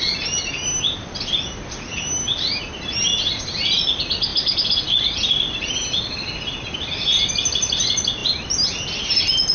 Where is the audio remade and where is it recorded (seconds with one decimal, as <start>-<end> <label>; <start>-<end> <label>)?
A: 0.0-9.5 recorded

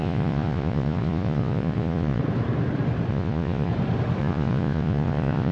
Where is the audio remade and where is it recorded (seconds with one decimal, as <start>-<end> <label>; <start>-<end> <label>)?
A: 0.0-2.2 remade; 2.2-3.1 recorded; 3.1-3.7 remade; 3.7-4.2 recorded; 4.2-5.5 remade

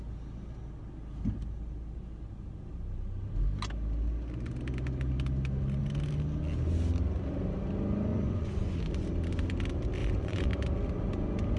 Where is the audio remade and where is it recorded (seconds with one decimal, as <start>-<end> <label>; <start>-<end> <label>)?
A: 0.0-8.1 recorded; 8.1-8.8 remade; 8.8-10.0 recorded; 10.0-10.5 remade; 10.5-11.6 recorded

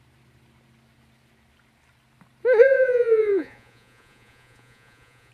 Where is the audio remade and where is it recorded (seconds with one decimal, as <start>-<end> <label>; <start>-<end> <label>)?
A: 0.0-2.6 recorded; 2.6-5.3 remade

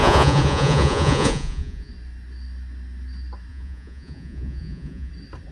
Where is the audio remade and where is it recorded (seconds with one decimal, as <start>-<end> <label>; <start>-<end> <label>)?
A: 0.0-1.9 remade; 1.9-3.5 recorded; 3.5-5.1 remade; 5.1-5.5 recorded

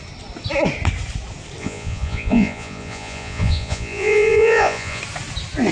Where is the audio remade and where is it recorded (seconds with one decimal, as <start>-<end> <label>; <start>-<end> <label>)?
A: 0.0-1.6 recorded; 1.6-5.0 remade; 5.0-5.7 recorded